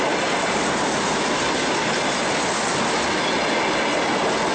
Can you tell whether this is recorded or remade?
recorded